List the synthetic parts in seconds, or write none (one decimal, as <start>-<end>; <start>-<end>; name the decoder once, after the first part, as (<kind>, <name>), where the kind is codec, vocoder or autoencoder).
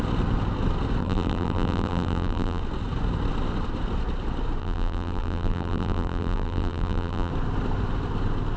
1.0-2.6 (vocoder, BigVGAN v2); 4.6-7.3